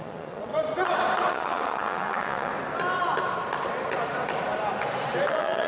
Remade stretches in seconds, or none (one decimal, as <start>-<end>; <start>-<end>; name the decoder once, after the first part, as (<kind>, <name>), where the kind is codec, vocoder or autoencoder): 0.0-0.5 (vocoder, Vocos); 1.3-2.5; 5.3-5.7